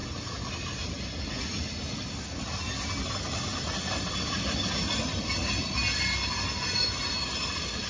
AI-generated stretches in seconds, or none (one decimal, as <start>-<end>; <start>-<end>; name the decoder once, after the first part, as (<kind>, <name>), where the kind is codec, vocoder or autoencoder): none